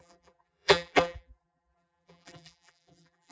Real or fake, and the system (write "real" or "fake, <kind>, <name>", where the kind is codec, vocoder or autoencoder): fake, vocoder, BigVGAN v2